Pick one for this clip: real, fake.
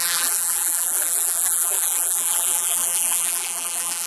fake